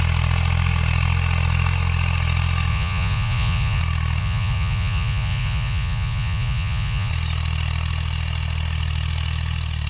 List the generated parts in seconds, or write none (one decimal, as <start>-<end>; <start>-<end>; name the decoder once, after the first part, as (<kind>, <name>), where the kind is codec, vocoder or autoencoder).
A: 2.7-3.8 (vocoder, Vocos); 4.2-7.1